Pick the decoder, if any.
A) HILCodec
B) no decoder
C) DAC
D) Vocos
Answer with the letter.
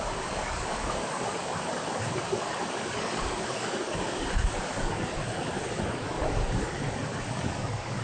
C